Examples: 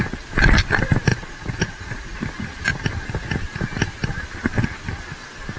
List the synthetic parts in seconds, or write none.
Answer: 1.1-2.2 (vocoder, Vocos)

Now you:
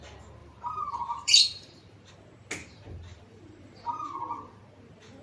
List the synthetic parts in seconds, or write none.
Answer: 0.4-2.1 (vocoder, BigVGAN v2); 2.6-4.5

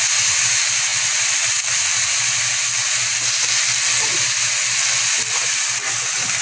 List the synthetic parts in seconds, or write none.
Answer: none

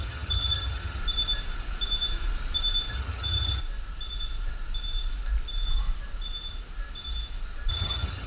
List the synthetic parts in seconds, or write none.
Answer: 0.0-1.0 (vocoder, HiFi-GAN); 2.9-3.6; 7.7-8.3

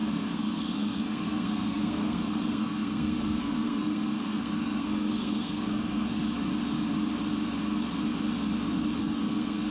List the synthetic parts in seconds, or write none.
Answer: 0.0-6.2 (codec, SNAC); 9.0-9.7

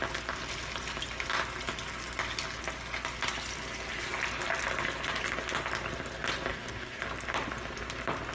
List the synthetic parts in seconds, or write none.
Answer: 6.5-7.0 (codec, DAC)

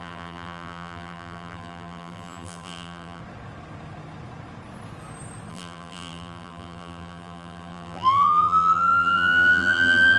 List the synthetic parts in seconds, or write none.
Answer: 0.0-3.2 (vocoder, BigVGAN v2); 5.5-10.2

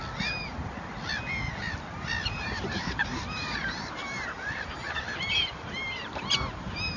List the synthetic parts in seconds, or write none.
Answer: 2.4-7.0 (vocoder, BigVGAN v2)